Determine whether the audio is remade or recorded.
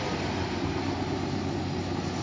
recorded